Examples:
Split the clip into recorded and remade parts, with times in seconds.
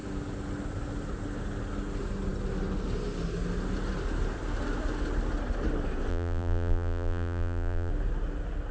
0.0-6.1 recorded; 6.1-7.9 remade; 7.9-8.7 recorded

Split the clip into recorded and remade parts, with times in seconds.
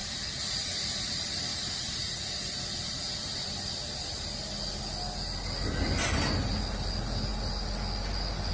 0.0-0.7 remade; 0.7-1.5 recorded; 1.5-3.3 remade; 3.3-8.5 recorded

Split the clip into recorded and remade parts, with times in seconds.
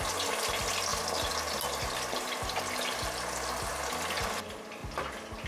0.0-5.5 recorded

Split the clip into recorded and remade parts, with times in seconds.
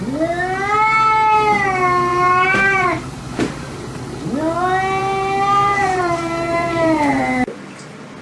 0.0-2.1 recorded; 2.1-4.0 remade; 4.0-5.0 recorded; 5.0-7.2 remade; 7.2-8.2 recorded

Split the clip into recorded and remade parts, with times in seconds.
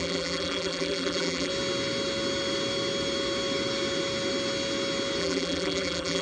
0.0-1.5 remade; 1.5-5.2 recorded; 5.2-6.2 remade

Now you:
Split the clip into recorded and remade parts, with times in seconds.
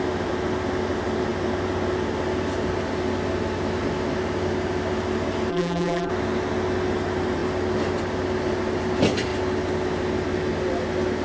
0.0-5.5 recorded; 5.5-6.1 remade; 6.1-11.2 recorded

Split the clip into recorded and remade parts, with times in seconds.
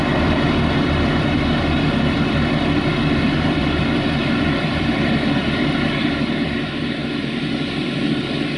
0.0-8.6 remade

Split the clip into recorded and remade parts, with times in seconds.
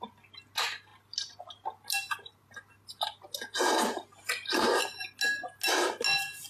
0.0-6.5 recorded